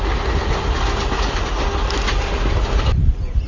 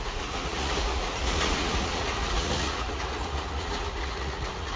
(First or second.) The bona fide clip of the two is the first